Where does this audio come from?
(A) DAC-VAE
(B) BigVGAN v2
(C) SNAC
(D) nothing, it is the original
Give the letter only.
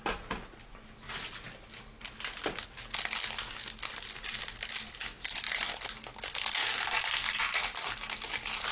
D